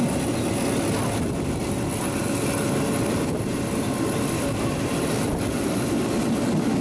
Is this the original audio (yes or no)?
yes